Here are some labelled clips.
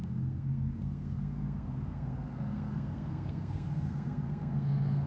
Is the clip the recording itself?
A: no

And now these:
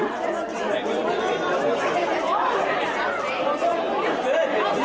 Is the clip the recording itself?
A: yes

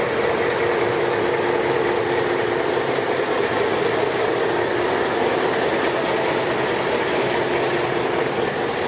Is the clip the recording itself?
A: yes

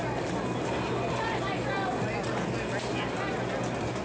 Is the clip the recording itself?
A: yes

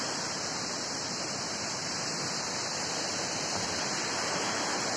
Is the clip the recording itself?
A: yes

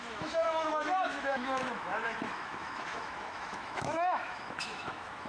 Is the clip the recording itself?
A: no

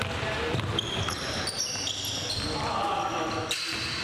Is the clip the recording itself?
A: yes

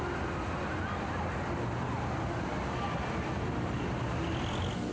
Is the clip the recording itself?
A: yes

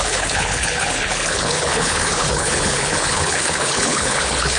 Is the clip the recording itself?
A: no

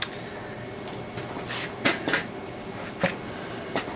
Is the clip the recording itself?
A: yes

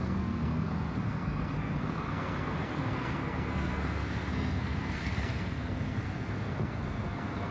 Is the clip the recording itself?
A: no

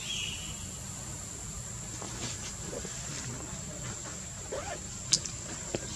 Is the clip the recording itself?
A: yes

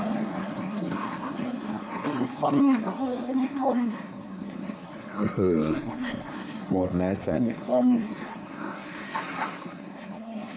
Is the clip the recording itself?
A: no